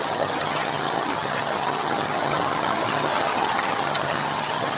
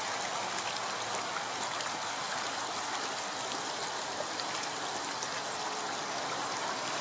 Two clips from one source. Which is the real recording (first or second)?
second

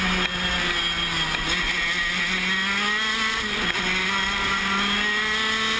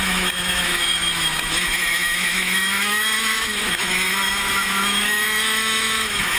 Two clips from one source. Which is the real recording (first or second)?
first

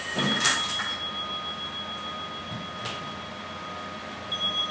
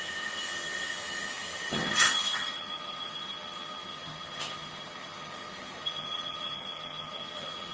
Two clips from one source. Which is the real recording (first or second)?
first